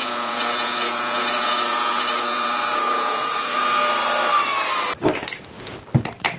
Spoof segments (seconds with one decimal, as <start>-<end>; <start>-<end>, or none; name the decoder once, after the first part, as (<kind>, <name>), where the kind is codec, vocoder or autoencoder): 0.0-3.8 (vocoder, Vocos)